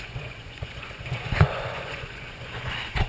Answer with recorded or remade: remade